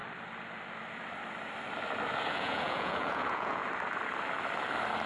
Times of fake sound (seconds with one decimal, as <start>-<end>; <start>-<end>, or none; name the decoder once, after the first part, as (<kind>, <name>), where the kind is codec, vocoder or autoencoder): 2.3-3.6 (vocoder, Vocos)